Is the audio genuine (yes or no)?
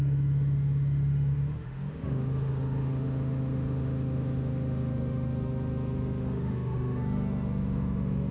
no